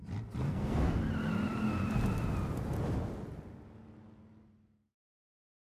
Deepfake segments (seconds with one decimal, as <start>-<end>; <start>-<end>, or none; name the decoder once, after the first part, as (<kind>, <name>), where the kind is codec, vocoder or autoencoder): 0.4-1.0 (codec, SNAC)